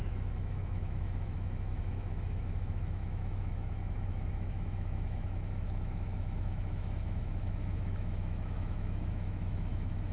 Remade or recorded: remade